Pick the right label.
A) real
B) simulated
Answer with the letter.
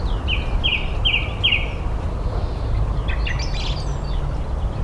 A